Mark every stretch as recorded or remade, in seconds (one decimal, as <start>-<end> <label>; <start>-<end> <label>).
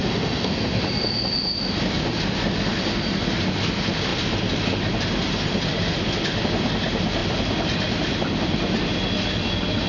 0.0-0.8 remade; 0.8-9.9 recorded